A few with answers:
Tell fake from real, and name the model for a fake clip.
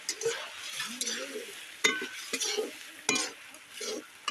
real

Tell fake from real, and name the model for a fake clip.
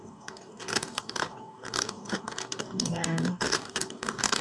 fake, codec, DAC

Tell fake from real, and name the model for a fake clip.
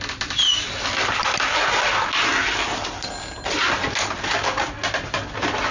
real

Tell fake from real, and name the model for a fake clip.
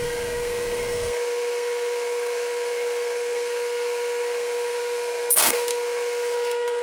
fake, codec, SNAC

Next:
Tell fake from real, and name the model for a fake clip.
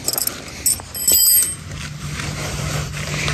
real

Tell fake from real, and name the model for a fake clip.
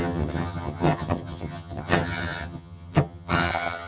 fake, vocoder, HiFi-GAN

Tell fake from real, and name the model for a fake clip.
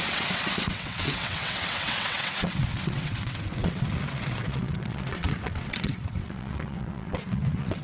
fake, vocoder, WaveNeXt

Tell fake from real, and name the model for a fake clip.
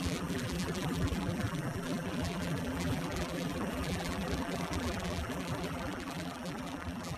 fake, vocoder, BigVGAN v2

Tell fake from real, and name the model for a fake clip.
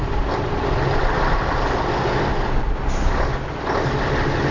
real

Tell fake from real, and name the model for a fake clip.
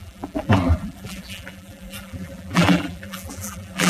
fake, vocoder, BigVGAN v2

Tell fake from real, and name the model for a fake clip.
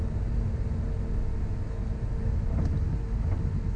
real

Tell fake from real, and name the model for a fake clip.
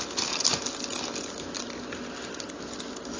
real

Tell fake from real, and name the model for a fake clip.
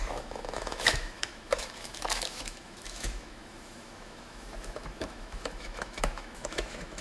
fake, autoencoder, DAC-VAE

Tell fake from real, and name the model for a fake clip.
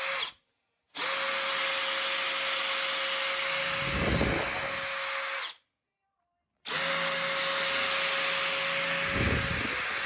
real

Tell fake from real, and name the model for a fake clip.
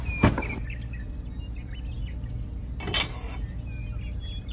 real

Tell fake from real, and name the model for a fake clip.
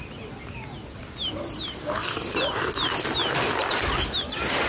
real